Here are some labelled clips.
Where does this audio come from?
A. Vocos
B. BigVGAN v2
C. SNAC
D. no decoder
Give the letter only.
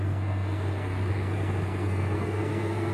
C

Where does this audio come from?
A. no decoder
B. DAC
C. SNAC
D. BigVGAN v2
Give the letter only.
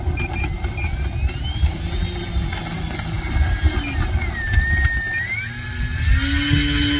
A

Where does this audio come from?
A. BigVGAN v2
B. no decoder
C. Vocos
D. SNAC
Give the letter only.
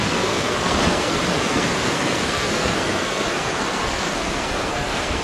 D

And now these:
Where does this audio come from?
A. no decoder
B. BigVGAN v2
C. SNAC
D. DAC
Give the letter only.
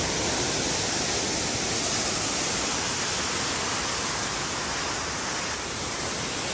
A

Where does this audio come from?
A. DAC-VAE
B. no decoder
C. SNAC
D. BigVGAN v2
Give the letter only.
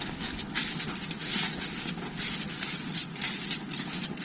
B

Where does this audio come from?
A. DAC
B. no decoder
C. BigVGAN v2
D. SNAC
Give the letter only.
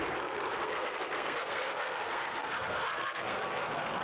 D